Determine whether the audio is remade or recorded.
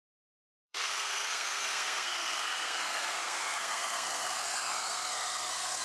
remade